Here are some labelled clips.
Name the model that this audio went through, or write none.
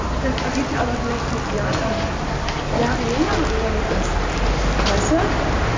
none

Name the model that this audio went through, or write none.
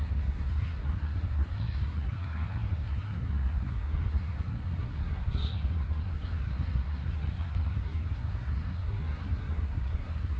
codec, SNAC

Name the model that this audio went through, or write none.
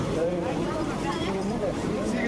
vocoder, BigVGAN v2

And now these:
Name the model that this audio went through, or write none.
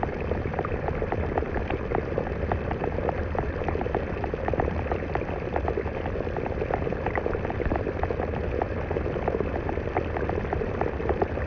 none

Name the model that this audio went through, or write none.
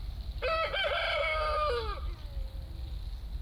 none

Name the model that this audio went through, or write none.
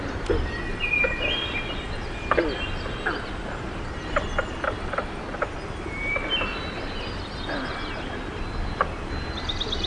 none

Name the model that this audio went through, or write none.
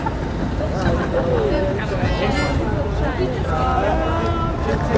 none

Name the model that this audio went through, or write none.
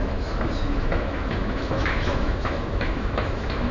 autoencoder, DAC-VAE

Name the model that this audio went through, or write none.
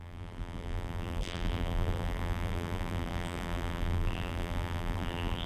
vocoder, BigVGAN v2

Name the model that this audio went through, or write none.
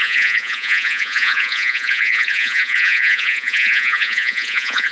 vocoder, Vocos